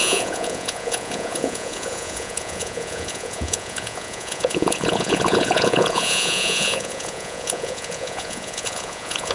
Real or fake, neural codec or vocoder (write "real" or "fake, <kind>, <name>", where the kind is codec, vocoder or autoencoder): fake, vocoder, Vocos